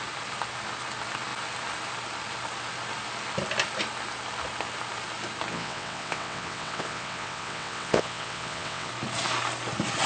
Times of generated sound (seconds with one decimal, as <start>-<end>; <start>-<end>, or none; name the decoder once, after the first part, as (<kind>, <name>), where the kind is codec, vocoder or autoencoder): 5.5-8.9 (vocoder, WaveNeXt)